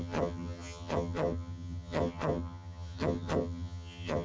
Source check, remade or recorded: remade